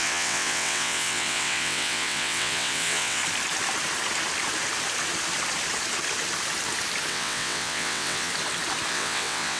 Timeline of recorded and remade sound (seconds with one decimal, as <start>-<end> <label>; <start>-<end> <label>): 0.0-3.2 remade; 3.2-7.1 recorded; 7.1-8.3 remade; 8.3-8.9 recorded; 8.9-9.6 remade